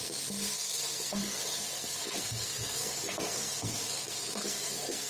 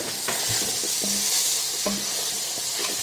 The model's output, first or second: first